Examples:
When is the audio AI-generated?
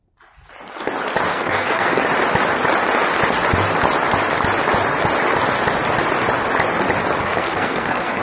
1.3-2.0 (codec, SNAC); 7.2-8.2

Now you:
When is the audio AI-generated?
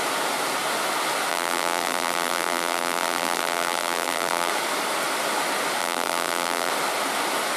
1.3-4.5 (vocoder, BigVGAN v2); 5.8-6.7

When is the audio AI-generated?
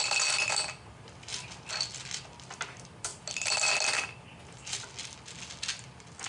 none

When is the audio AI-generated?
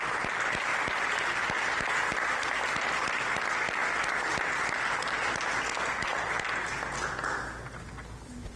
none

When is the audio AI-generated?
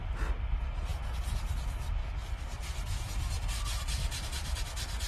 4.0-4.6 (vocoder, BigVGAN v2)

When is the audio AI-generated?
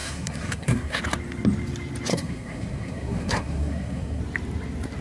0.0-1.0 (codec, SNAC); 2.1-4.2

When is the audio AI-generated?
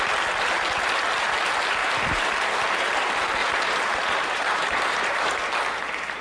1.8-2.3 (vocoder, BigVGAN v2); 3.4-5.4